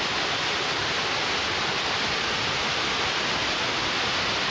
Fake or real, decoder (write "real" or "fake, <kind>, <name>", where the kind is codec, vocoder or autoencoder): real